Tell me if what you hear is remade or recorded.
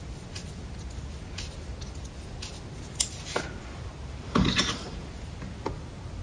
recorded